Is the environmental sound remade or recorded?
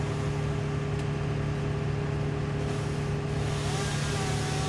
recorded